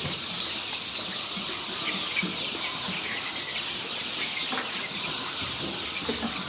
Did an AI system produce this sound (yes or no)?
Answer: no